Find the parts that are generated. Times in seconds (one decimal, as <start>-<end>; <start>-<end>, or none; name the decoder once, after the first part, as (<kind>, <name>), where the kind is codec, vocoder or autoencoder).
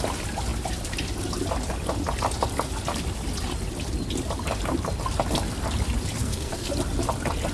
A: 6.2-6.7 (codec, SNAC)